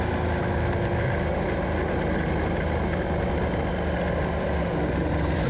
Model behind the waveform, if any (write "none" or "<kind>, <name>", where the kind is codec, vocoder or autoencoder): none